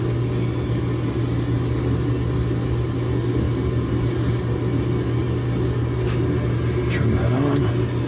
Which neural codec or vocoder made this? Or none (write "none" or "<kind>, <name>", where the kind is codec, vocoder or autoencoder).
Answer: none